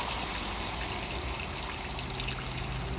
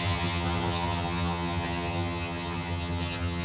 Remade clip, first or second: second